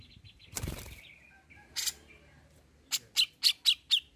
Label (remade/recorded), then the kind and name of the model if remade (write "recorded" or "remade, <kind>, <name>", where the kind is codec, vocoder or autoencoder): recorded